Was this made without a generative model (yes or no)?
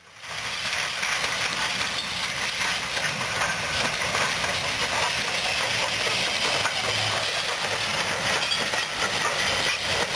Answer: yes